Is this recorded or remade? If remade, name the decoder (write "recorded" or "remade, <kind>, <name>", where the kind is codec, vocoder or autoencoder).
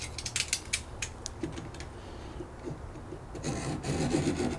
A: recorded